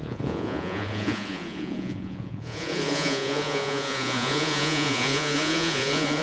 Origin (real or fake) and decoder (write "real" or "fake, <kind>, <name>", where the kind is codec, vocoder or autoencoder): fake, vocoder, Vocos